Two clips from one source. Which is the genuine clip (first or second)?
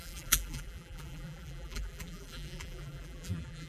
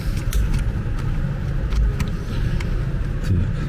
second